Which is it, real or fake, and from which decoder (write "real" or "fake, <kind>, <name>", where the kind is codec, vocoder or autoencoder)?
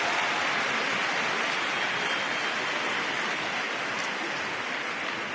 real